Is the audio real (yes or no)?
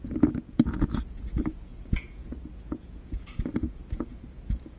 no